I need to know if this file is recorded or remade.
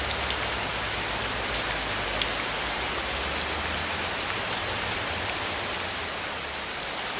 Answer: recorded